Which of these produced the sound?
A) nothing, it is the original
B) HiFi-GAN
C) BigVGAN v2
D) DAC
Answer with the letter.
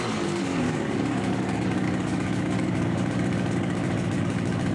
D